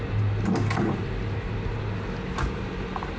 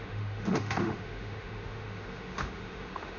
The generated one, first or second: second